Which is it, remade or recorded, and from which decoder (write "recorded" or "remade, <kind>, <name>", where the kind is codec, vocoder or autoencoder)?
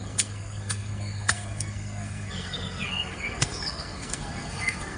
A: remade, codec, SNAC